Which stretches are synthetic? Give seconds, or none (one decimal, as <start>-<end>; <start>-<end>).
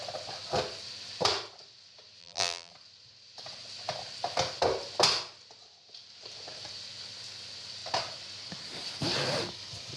2.2-2.7